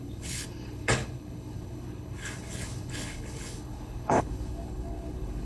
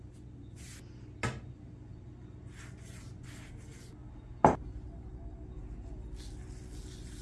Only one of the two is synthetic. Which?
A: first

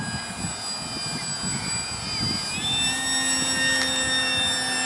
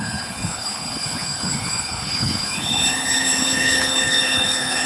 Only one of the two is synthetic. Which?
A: second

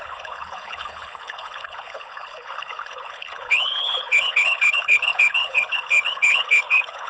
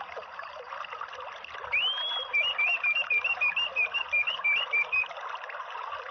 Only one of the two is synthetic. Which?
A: first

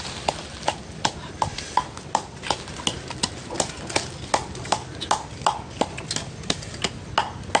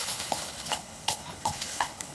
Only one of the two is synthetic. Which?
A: second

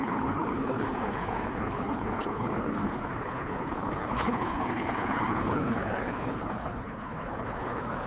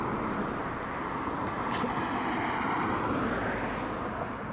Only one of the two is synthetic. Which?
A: first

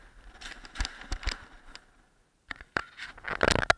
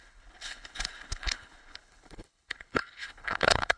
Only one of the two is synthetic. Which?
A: second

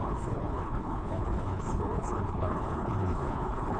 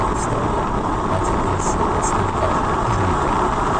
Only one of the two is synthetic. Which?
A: first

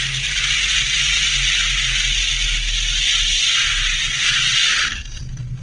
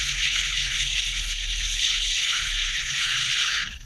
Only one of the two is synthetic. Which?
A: second